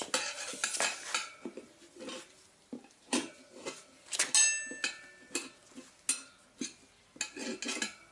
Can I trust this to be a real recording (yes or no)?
yes